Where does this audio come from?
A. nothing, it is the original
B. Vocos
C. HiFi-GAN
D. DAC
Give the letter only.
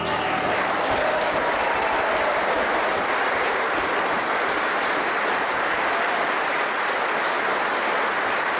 A